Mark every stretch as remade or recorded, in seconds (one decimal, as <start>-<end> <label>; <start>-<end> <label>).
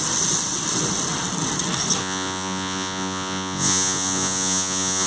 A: 0.0-2.0 recorded; 2.0-5.1 remade